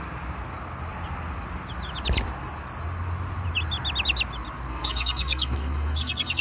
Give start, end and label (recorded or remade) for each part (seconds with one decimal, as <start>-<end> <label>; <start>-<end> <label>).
0.0-4.7 recorded; 4.7-6.4 remade